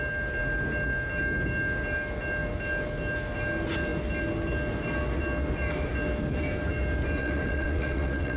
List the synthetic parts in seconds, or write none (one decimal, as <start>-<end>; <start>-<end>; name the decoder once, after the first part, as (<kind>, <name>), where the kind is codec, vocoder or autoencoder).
7.2-8.4 (vocoder, WaveNeXt)

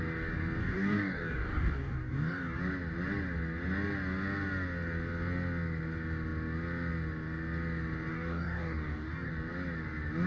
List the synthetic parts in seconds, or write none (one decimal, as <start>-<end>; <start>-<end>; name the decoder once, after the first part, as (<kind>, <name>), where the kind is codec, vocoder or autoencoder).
0.6-2.6 (codec, DAC); 8.1-9.3

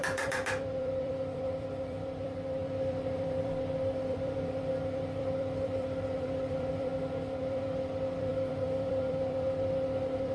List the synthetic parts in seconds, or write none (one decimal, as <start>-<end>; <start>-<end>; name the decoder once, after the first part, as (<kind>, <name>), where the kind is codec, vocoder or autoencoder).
0.0-6.9 (vocoder, BigVGAN v2); 7.4-10.3

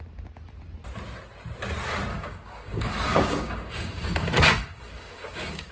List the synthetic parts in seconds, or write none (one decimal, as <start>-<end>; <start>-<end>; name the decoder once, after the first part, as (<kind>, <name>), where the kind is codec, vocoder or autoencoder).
2.1-5.7 (codec, DAC)

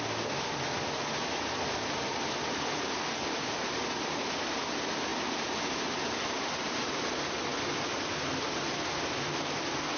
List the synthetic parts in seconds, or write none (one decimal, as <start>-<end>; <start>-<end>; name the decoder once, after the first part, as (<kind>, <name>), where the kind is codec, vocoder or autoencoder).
none

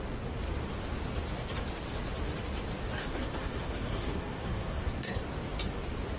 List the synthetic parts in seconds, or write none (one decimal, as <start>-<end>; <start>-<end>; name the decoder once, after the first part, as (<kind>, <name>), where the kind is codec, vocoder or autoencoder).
3.0-5.2 (codec, SNAC)